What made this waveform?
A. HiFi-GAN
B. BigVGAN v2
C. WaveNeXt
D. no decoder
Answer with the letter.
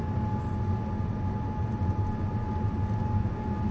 D